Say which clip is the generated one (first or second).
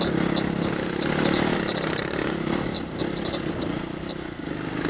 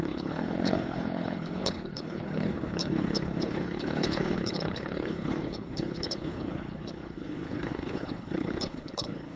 second